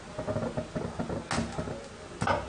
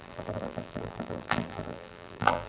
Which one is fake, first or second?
second